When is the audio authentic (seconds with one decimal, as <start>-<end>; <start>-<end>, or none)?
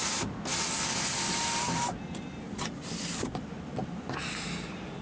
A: 0.0-5.0